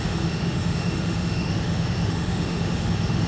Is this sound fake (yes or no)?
yes